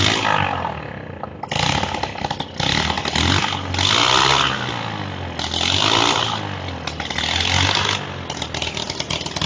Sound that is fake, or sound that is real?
real